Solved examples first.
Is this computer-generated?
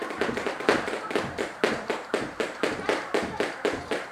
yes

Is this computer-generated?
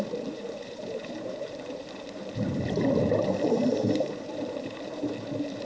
yes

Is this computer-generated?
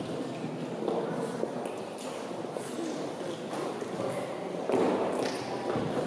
no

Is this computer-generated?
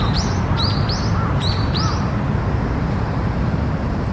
yes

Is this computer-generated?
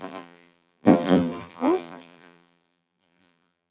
yes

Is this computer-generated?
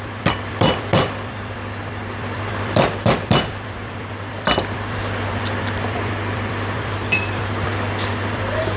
yes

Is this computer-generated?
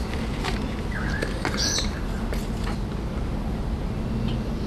no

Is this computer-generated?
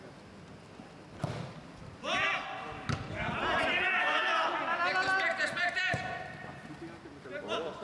no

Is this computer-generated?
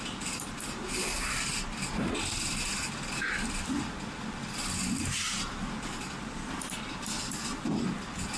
no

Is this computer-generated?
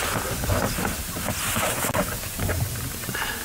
no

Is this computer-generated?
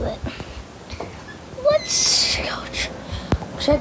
no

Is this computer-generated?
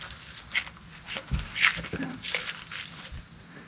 yes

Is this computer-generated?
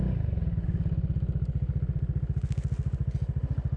no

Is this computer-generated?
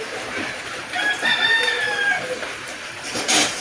yes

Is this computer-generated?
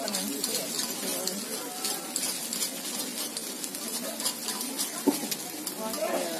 no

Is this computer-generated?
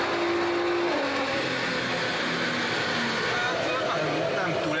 no